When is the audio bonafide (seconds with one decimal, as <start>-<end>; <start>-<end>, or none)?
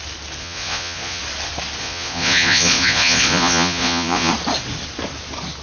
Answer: 0.0-0.4; 1.2-1.8; 4.3-5.6